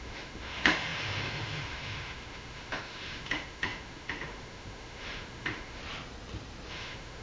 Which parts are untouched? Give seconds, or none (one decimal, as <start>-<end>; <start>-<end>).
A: 5.8-6.7